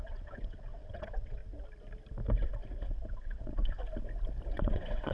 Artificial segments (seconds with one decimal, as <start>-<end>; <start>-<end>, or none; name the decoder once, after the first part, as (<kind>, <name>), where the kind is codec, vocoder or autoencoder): 0.0-1.4 (vocoder, WaveNeXt); 2.9-3.8; 4.5-5.1